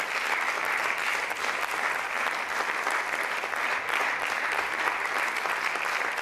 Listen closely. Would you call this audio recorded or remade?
recorded